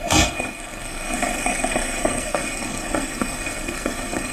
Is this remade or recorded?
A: remade